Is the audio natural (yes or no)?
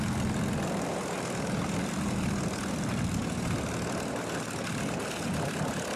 yes